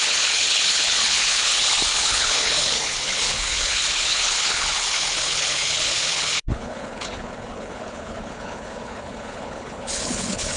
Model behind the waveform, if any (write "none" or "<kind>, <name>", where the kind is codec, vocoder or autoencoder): codec, HILCodec